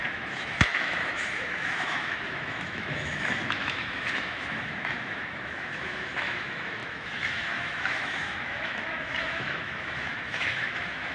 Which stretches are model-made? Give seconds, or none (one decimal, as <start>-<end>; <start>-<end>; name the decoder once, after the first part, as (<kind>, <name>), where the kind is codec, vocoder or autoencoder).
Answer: 0.0-11.1 (autoencoder, DAC-VAE)

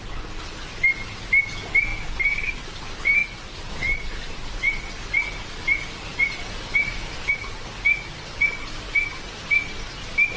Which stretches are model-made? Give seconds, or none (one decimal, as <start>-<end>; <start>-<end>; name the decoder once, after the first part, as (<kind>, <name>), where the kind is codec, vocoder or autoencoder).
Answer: none